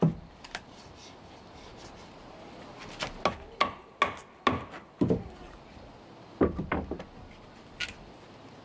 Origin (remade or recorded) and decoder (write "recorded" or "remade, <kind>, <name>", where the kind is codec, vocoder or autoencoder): recorded